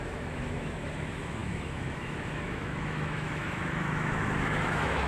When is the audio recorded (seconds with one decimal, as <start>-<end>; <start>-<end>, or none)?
none